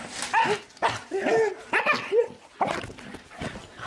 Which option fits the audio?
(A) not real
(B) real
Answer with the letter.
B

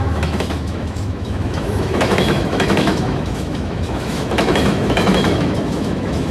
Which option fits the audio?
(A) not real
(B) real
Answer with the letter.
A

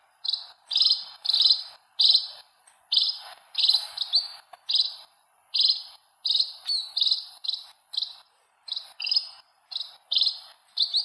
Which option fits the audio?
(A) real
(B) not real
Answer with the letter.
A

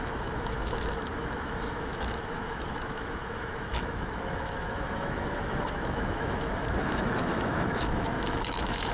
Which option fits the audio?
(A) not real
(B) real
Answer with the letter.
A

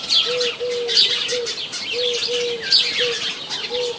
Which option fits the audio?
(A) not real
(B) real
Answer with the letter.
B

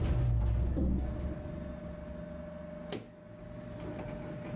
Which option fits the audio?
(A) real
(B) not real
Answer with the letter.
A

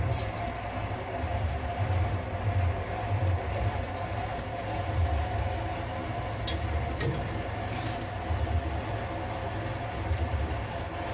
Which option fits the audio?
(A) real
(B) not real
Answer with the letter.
A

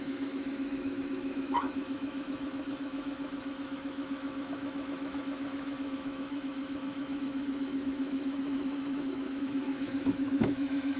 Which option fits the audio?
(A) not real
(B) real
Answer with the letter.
A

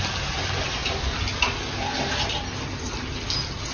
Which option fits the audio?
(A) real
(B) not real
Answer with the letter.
A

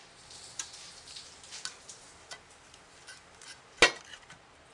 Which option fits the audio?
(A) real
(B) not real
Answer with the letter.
A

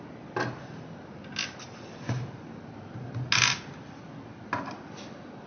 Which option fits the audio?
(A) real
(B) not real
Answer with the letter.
A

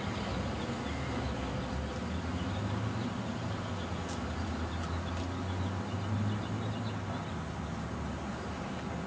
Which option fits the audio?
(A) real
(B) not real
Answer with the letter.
A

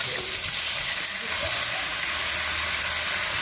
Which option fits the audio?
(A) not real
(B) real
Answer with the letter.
B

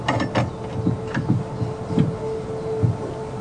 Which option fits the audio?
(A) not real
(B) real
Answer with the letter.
B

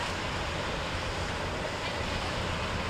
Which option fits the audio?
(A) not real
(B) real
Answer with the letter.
B